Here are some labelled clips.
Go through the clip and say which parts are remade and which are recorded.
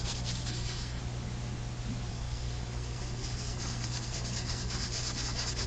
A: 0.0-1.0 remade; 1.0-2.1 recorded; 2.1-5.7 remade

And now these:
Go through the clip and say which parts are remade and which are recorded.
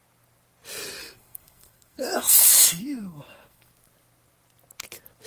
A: 0.0-1.0 recorded; 1.0-3.7 remade; 3.7-5.3 recorded